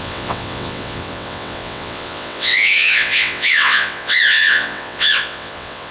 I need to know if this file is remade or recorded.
remade